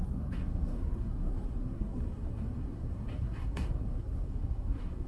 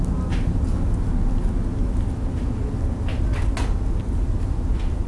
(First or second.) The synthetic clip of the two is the first